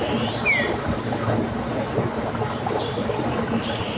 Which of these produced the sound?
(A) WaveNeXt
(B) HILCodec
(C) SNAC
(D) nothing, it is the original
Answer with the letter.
D